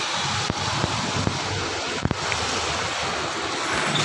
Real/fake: real